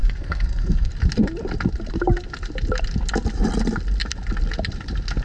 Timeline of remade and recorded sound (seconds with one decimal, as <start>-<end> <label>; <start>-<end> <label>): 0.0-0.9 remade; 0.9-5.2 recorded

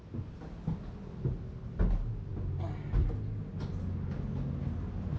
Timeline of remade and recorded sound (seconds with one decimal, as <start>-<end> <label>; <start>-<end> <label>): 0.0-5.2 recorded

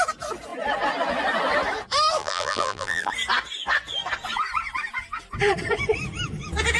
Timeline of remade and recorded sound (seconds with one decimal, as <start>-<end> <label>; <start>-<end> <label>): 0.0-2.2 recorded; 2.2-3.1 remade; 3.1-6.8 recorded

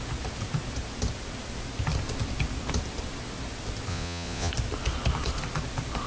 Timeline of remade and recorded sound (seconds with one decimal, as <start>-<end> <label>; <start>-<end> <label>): 0.0-3.9 recorded; 3.9-4.5 remade; 4.5-6.1 recorded

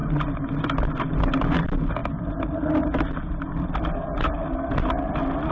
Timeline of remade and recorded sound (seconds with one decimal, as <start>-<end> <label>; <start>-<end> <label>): 0.0-5.5 recorded

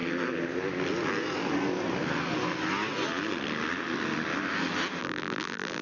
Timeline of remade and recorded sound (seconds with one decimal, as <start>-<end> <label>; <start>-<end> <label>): 0.0-5.0 recorded; 5.0-5.8 remade

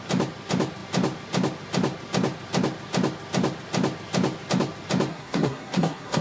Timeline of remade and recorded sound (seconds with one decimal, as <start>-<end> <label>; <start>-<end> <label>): 0.0-5.1 recorded; 5.1-6.2 remade

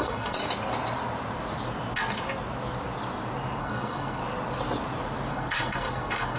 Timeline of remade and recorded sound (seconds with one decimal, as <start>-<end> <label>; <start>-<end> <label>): 0.0-0.4 remade; 0.4-3.6 recorded; 3.6-4.2 remade; 4.2-5.3 recorded; 5.3-6.4 remade